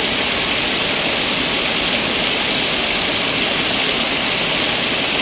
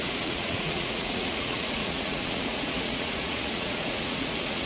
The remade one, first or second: second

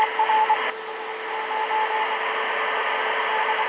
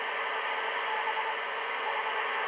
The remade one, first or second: second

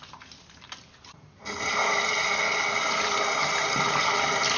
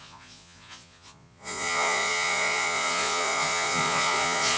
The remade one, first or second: second